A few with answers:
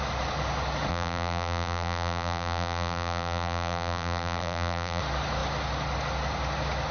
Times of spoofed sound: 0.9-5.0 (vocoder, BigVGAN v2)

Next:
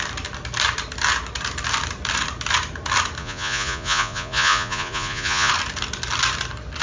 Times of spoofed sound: 3.2-5.5 (vocoder, Vocos)

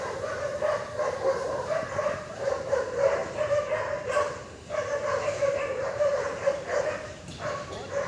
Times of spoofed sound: 0.0-0.5 (vocoder, BigVGAN v2); 1.1-3.2; 5.4-8.1

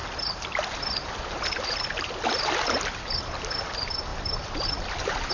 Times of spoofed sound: 0.0-3.2 (vocoder, BigVGAN v2); 4.1-5.3

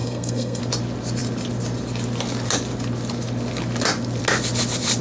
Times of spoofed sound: 0.0-0.6 (codec, SNAC)

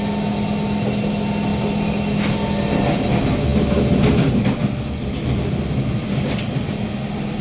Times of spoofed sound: none